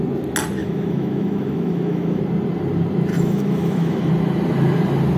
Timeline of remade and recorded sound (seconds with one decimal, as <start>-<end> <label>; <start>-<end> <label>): 0.0-0.6 recorded; 0.6-2.2 remade; 2.2-3.1 recorded; 3.1-4.1 remade; 4.1-5.2 recorded